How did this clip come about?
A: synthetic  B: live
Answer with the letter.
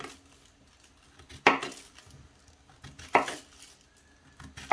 B